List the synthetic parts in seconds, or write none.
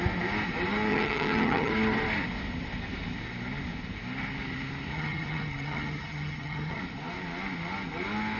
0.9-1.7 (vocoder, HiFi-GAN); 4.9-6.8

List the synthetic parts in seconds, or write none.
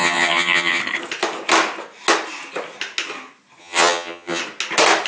0.0-0.8 (vocoder, HiFi-GAN); 3.6-4.4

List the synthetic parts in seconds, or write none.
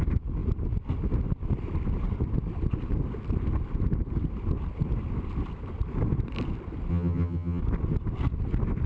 6.9-7.6 (vocoder, HiFi-GAN)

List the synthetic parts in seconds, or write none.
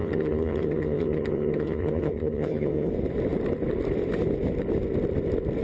0.0-2.9 (vocoder, HiFi-GAN)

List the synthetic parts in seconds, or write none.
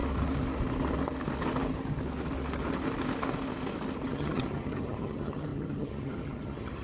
4.1-6.8 (vocoder, HiFi-GAN)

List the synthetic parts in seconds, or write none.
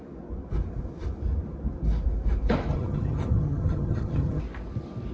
2.7-4.4 (vocoder, HiFi-GAN)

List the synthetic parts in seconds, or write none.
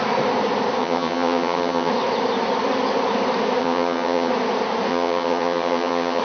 0.8-1.9 (vocoder, HiFi-GAN); 3.6-4.3; 4.9-6.2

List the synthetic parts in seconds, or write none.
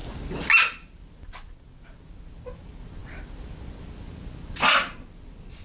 none